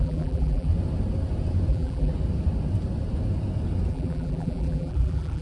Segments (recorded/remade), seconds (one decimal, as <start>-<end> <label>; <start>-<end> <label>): 0.0-0.7 remade; 0.7-1.7 recorded; 1.7-2.1 remade; 2.1-3.9 recorded; 3.9-5.4 remade

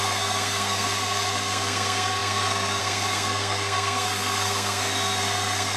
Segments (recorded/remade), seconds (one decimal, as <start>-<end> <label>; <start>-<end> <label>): 0.0-5.8 remade

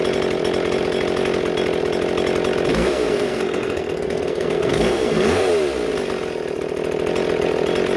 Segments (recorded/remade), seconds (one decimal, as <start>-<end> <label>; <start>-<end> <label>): 0.0-2.7 recorded; 2.7-5.5 remade; 5.5-8.0 recorded